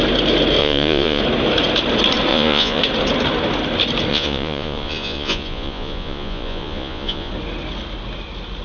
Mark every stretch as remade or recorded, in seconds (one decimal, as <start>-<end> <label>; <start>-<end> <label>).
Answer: 0.0-0.6 recorded; 0.6-1.2 remade; 1.2-2.3 recorded; 2.3-2.8 remade; 2.8-4.1 recorded; 4.1-7.3 remade; 7.3-8.6 recorded